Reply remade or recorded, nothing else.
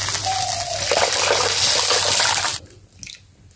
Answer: recorded